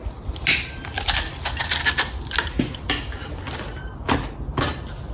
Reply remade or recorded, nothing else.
recorded